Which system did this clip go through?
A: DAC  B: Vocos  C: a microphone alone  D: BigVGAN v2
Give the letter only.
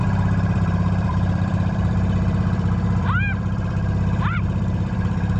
D